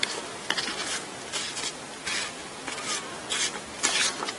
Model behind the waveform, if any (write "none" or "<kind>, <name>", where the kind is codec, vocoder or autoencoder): none